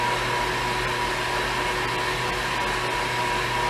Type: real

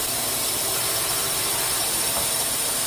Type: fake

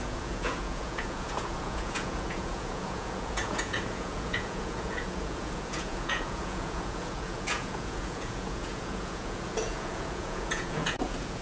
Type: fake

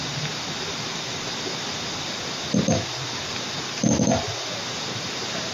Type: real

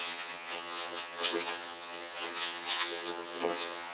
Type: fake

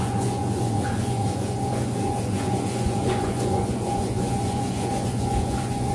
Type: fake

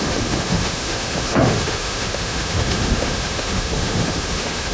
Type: fake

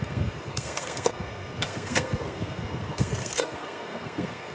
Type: fake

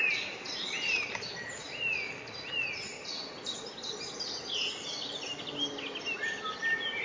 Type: real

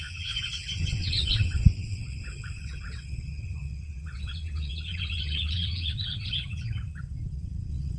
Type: fake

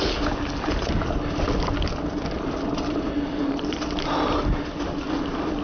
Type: real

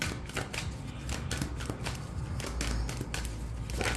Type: real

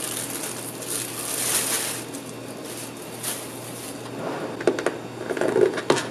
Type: real